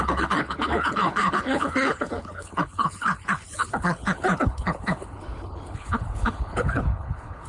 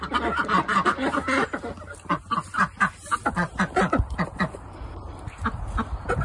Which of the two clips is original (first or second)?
second